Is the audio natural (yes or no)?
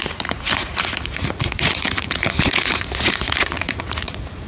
no